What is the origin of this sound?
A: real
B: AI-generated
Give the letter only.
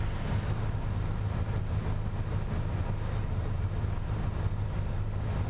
A